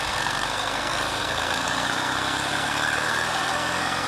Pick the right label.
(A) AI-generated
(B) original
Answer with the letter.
A